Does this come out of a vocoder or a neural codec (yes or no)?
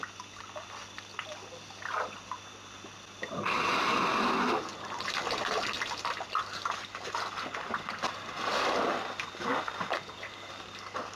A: no